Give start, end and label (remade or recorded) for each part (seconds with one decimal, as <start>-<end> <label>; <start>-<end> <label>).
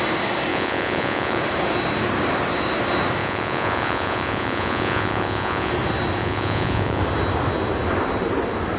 0.0-0.5 recorded; 0.5-1.4 remade; 1.4-3.2 recorded; 3.2-5.7 remade; 5.7-6.2 recorded; 6.2-7.0 remade; 7.0-8.8 recorded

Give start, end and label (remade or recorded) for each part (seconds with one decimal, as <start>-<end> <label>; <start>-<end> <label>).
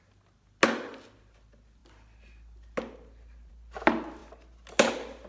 0.0-5.3 recorded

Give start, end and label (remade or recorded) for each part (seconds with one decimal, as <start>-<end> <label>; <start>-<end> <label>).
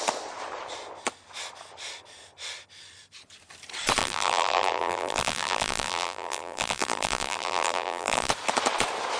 0.0-4.0 recorded; 4.0-8.3 remade; 8.3-9.2 recorded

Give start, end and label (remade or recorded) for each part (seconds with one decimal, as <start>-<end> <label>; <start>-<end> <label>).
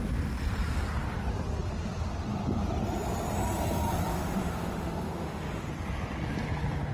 0.0-4.1 recorded; 4.1-5.7 remade; 5.7-6.9 recorded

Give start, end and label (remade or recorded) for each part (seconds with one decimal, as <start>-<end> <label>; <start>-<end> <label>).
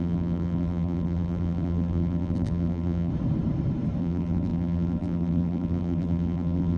0.0-3.1 remade; 3.1-4.0 recorded; 4.0-6.8 remade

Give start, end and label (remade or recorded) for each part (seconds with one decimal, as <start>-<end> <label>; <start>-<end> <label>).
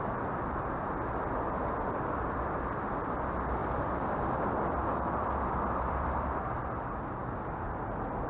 0.0-8.3 remade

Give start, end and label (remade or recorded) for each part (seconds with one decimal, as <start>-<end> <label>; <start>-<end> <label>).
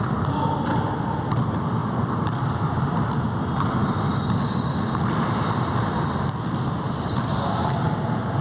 0.0-8.4 recorded